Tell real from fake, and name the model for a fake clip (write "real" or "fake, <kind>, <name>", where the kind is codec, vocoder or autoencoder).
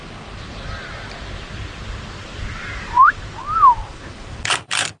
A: fake, vocoder, BigVGAN v2